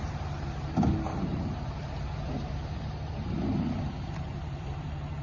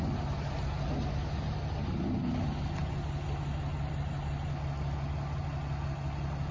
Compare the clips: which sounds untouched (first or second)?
second